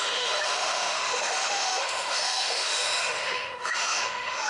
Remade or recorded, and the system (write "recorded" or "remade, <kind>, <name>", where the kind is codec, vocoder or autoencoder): remade, autoencoder, DAC-VAE